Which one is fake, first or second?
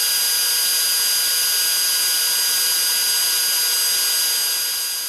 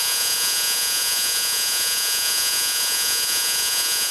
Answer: second